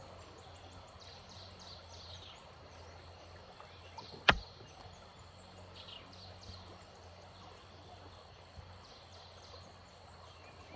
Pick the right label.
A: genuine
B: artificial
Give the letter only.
B